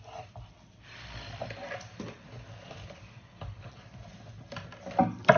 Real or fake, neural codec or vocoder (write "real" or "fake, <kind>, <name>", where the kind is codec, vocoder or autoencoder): real